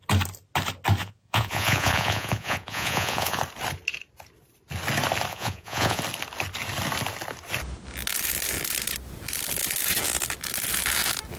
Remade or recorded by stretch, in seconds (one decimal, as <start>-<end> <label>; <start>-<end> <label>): 0.0-1.0 recorded; 1.0-3.4 remade; 3.4-5.3 recorded; 5.3-6.0 remade; 6.0-11.4 recorded